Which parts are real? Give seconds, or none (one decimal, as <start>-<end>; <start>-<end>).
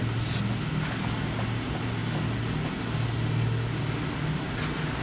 0.0-5.0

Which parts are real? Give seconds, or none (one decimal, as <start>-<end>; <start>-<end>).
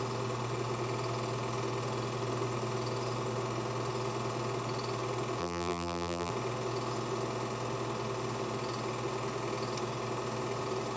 0.0-5.4; 6.3-11.0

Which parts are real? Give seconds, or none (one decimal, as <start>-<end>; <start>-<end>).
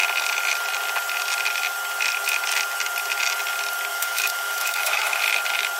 0.0-3.9; 5.2-5.8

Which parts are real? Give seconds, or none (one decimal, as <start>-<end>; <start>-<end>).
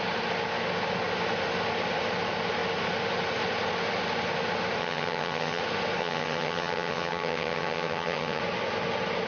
0.0-4.8; 5.6-6.0; 8.4-9.3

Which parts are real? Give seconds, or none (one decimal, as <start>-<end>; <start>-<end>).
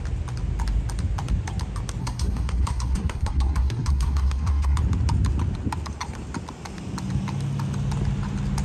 0.0-2.0; 4.8-8.6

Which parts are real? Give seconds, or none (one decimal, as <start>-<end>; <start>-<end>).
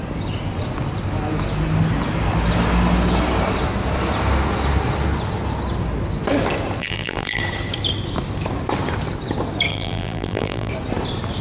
0.0-6.8; 7.4-9.7; 10.7-11.4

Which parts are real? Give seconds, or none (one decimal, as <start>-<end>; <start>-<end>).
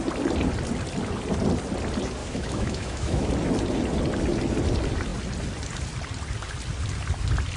0.0-2.2; 3.3-7.6